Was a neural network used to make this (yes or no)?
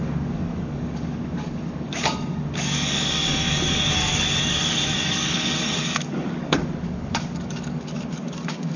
yes